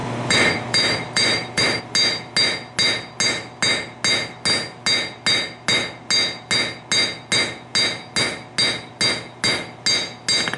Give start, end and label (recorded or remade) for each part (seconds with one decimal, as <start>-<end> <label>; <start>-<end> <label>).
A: 0.0-1.8 remade; 1.8-10.6 recorded